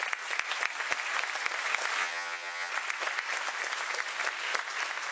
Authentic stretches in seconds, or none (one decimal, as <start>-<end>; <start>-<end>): 0.0-2.0; 2.7-5.1